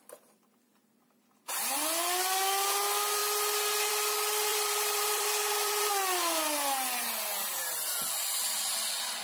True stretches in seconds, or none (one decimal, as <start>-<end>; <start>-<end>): 0.0-4.5; 5.9-9.2